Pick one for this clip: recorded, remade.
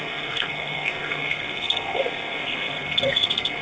remade